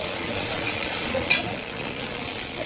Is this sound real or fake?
fake